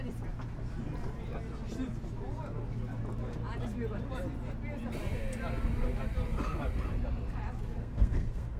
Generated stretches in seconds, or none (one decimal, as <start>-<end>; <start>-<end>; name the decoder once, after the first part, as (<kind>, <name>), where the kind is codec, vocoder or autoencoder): 7.8-8.6 (codec, SNAC)